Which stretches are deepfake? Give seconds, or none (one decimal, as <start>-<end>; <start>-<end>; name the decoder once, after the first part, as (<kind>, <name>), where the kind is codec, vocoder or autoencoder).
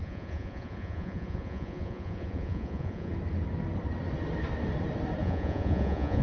0.0-3.1 (vocoder, Vocos); 5.2-6.2